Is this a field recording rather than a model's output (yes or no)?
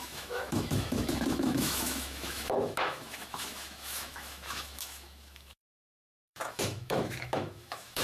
no